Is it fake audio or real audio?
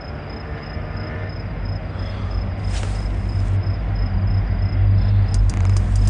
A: real